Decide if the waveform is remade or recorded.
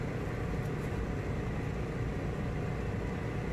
recorded